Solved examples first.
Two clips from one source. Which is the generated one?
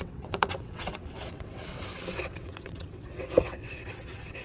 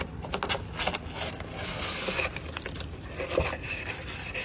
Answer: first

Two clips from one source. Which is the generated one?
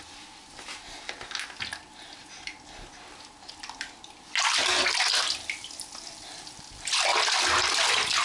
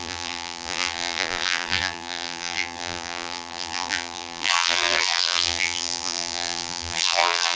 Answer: second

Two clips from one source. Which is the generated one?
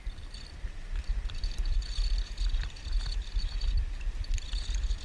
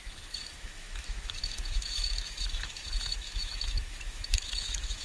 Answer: second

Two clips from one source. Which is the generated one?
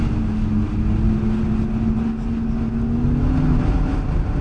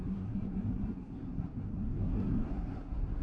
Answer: second